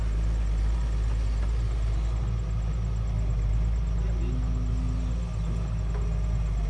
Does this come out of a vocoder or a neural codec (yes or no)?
no